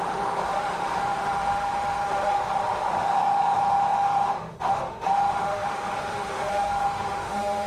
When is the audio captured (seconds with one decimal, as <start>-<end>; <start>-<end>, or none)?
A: 2.2-2.9